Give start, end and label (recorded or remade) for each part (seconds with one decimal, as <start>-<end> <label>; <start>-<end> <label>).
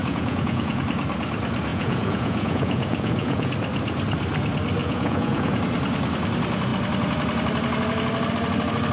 0.0-0.8 remade; 0.8-1.7 recorded; 1.7-3.5 remade; 3.5-4.8 recorded; 4.8-5.6 remade; 5.6-8.9 recorded